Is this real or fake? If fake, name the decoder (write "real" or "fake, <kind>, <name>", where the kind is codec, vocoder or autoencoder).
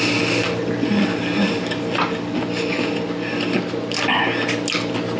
real